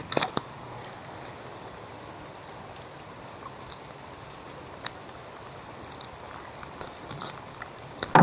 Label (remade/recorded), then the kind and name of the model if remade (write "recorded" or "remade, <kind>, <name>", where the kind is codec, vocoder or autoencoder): recorded